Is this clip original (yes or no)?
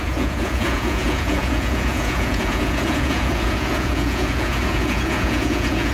no